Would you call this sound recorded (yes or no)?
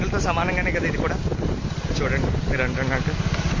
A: yes